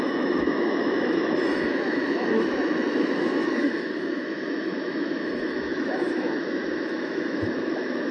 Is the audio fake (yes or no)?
yes